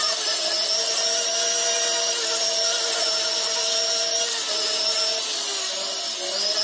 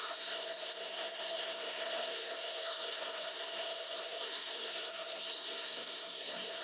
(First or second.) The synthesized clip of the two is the second